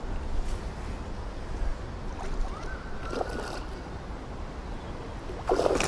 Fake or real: real